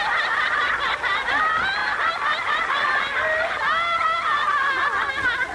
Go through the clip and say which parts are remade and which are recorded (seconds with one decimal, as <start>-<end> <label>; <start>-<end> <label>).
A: 0.0-5.5 recorded